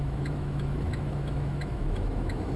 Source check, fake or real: fake